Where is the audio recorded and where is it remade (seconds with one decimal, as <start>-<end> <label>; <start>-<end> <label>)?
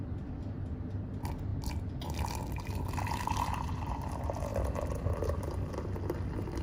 0.0-6.6 recorded